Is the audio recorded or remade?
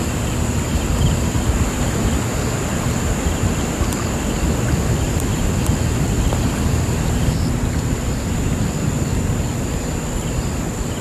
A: recorded